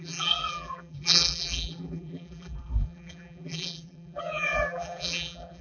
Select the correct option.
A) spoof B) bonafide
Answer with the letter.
A